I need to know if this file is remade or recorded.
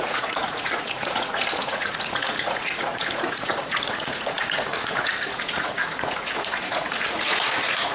remade